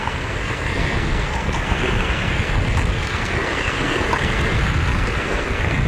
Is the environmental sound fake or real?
fake